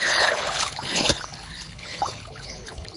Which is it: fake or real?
fake